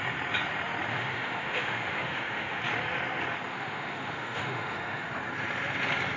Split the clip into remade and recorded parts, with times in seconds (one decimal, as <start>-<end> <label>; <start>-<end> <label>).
0.0-0.9 recorded; 0.9-2.6 remade; 2.6-3.5 recorded; 3.5-5.1 remade; 5.1-6.2 recorded